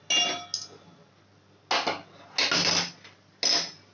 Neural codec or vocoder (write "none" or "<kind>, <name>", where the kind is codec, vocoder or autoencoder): none